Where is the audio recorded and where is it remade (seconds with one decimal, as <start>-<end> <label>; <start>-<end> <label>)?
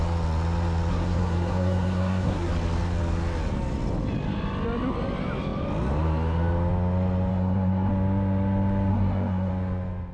0.0-0.9 recorded; 0.9-2.5 remade; 2.5-7.3 recorded; 7.3-7.9 remade; 7.9-8.9 recorded; 8.9-9.5 remade; 9.5-10.1 recorded